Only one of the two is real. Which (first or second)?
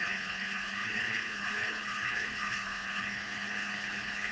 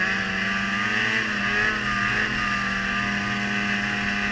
second